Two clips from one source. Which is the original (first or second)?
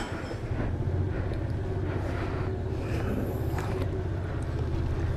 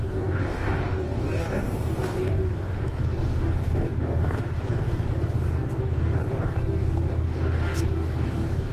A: first